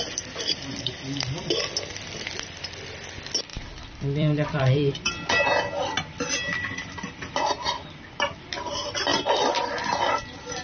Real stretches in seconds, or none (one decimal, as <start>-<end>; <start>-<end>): 0.0-3.5; 5.1-10.6